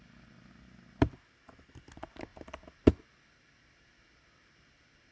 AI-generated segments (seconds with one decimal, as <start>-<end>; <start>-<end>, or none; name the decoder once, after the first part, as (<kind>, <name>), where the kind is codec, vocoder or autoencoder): none